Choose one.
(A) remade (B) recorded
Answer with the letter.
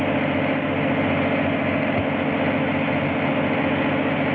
B